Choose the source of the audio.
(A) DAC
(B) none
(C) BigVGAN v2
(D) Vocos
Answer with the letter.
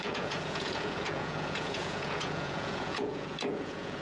D